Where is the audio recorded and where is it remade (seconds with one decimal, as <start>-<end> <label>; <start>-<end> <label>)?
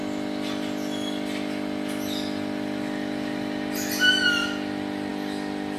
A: 0.0-5.8 recorded